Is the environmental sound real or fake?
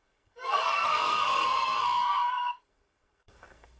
fake